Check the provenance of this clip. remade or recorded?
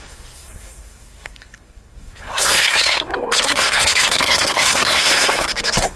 remade